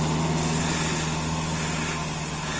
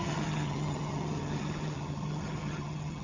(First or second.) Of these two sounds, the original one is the first